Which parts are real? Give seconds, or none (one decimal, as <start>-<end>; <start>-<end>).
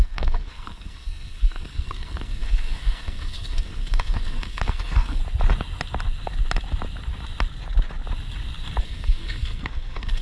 5.2-8.8